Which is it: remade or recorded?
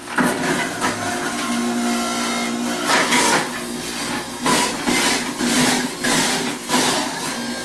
recorded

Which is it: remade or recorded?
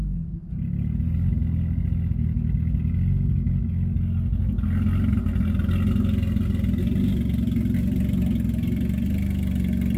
recorded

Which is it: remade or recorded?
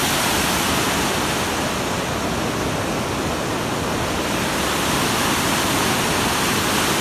recorded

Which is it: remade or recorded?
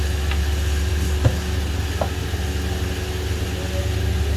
recorded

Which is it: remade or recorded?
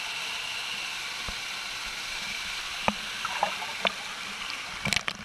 recorded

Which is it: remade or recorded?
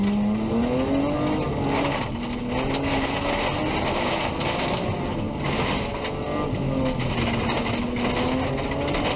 recorded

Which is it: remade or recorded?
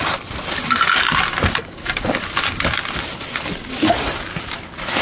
recorded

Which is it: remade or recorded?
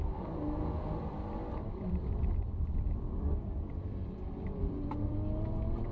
remade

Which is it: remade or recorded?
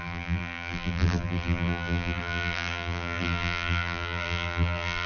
remade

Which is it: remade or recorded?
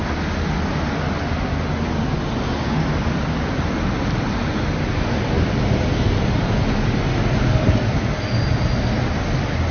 recorded